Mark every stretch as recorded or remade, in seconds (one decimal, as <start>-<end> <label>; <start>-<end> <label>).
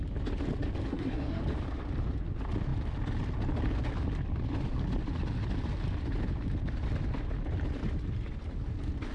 0.0-0.9 recorded; 0.9-1.4 remade; 1.4-9.1 recorded